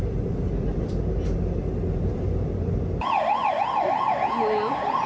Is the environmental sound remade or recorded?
recorded